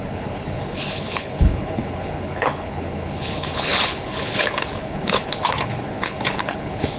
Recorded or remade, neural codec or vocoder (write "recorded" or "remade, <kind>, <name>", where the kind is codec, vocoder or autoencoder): remade, codec, HILCodec